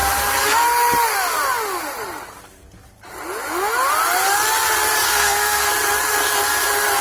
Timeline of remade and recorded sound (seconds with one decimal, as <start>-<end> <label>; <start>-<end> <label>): 0.0-5.1 recorded; 5.1-5.7 remade; 5.7-7.0 recorded